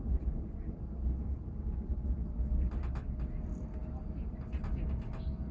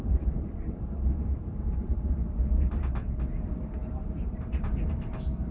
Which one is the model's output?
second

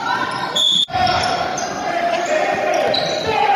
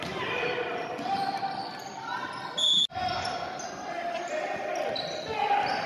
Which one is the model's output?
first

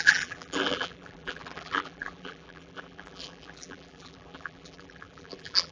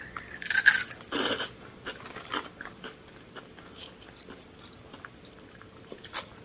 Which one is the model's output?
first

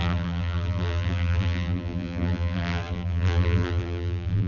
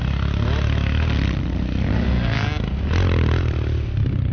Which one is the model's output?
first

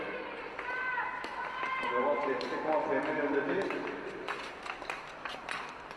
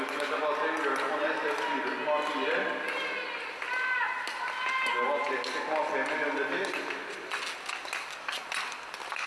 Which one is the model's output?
first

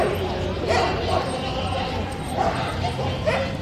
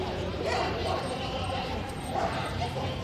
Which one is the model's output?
second